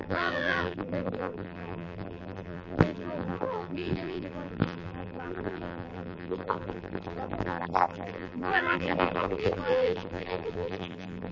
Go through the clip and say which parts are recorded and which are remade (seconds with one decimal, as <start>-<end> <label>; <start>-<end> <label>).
0.0-11.3 remade